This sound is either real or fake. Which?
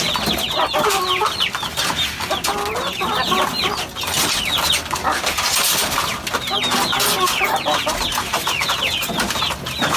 real